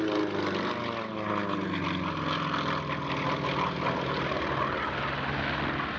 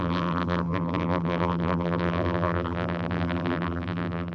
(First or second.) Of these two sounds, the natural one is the first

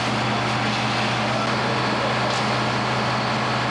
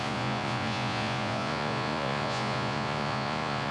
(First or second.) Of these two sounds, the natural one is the first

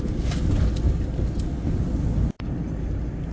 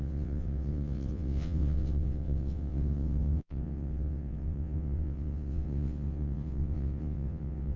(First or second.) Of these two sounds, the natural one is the first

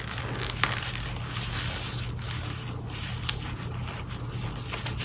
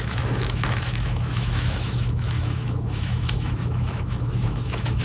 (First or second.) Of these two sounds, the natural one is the first